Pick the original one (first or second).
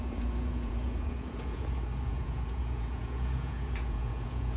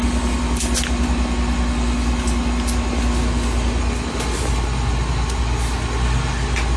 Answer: second